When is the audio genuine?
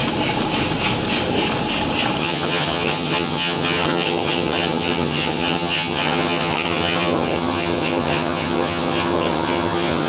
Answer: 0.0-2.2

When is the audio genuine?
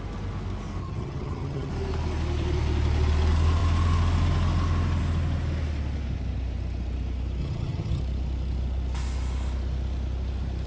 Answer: 0.0-0.8; 1.7-7.4; 8.0-10.7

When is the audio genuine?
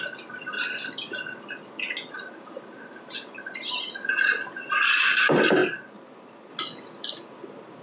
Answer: 0.0-7.8